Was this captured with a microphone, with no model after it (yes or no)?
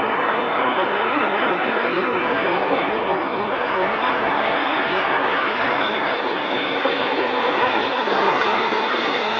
no